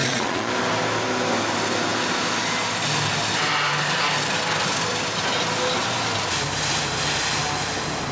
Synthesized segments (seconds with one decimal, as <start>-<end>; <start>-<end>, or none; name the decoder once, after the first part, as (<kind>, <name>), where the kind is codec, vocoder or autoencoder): 0.0-0.5 (vocoder, Vocos)